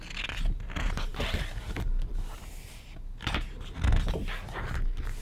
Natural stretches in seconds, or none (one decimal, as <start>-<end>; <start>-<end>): 0.0-5.2